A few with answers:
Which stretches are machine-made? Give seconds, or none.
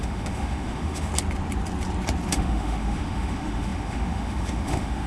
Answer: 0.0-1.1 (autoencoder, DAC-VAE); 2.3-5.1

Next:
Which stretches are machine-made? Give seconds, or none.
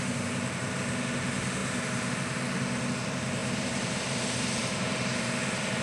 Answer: 1.6-2.4 (vocoder, BigVGAN v2); 3.4-5.8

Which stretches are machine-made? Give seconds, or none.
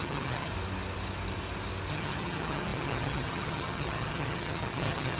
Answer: 0.0-0.5 (vocoder, HiFi-GAN); 1.9-5.2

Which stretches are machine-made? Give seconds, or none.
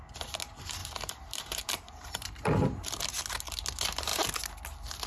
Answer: 0.8-3.0 (vocoder, BigVGAN v2)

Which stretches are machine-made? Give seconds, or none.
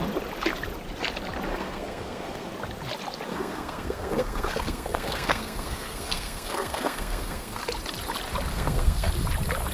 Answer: 1.5-2.5 (codec, SNAC); 3.3-7.6; 8.5-9.1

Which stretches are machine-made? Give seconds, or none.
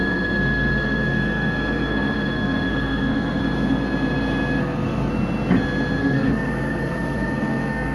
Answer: 0.0-3.4 (codec, SNAC); 4.6-5.1; 6.0-7.9